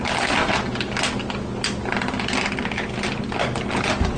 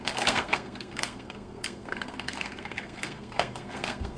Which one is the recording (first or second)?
first